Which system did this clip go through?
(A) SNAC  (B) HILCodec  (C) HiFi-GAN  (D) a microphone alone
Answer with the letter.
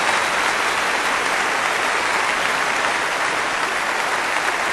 D